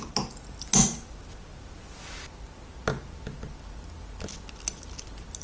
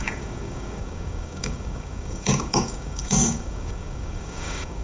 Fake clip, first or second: second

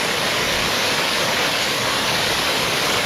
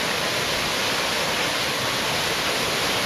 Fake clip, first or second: first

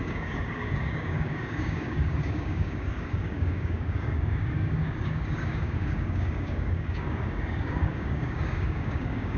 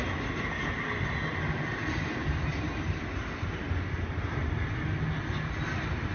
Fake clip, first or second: first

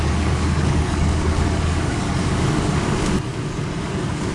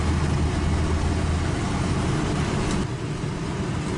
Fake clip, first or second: first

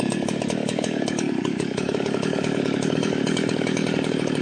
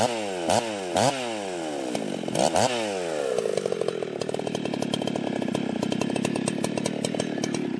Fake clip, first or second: first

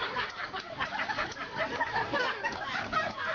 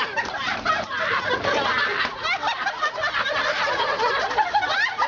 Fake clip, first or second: first